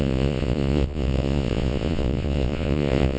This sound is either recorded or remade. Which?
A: remade